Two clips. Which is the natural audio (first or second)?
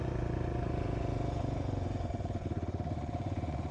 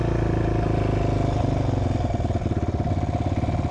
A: second